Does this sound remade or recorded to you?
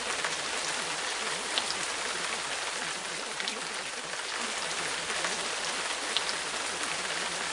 recorded